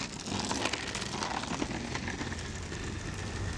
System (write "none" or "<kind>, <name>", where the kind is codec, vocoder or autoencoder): none